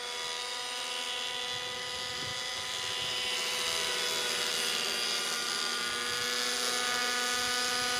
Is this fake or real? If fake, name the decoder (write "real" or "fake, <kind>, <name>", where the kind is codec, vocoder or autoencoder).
real